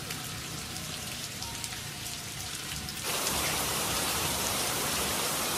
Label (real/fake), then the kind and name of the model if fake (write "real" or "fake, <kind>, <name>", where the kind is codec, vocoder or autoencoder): fake, vocoder, BigVGAN v2